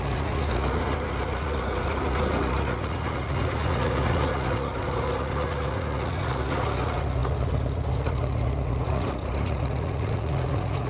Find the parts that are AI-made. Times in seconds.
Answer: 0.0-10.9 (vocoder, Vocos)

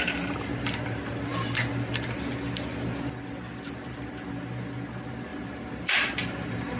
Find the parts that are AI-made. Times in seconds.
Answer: 5.3-6.8 (vocoder, BigVGAN v2)